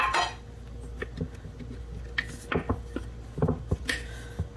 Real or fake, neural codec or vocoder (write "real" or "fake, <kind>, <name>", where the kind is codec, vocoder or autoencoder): real